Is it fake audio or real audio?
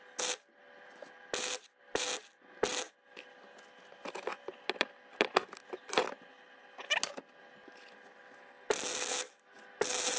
real